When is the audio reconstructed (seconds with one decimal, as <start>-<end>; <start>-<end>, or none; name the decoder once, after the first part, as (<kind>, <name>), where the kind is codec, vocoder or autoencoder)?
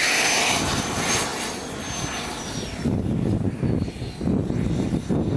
none